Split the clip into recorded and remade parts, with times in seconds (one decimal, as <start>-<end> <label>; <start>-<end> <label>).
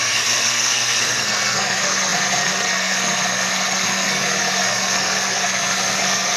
0.0-6.4 remade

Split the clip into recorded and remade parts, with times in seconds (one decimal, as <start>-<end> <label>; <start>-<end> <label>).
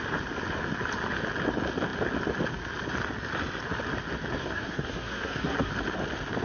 0.0-4.4 recorded; 4.4-5.7 remade; 5.7-6.4 recorded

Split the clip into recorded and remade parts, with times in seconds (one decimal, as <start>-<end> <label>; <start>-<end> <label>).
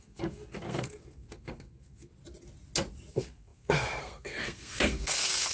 0.0-2.1 remade; 2.1-3.1 recorded; 3.1-5.5 remade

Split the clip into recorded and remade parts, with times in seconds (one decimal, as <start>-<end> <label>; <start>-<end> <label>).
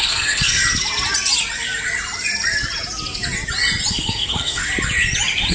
0.0-0.6 remade; 0.6-3.9 recorded; 3.9-4.6 remade; 4.6-5.5 recorded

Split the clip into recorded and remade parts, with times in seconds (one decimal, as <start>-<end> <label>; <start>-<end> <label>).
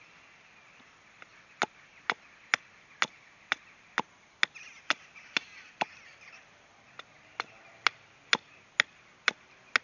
0.0-9.8 recorded